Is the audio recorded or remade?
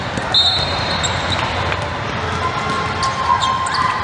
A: recorded